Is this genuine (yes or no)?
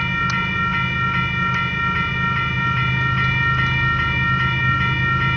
yes